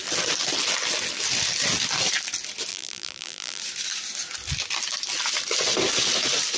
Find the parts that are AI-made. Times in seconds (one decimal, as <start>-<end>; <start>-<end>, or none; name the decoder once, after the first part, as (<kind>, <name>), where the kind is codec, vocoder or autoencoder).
2.7-3.6 (vocoder, BigVGAN v2)